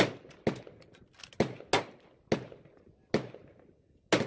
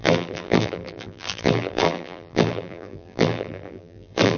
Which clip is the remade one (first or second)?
second